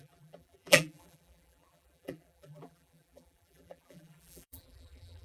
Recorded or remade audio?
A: remade